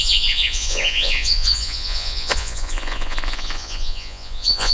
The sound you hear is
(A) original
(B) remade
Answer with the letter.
B